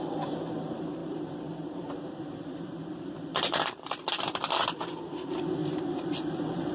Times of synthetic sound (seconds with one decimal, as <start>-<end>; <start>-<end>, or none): 1.0-3.9; 5.6-6.7